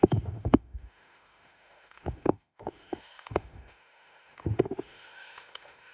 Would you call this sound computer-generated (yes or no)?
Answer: yes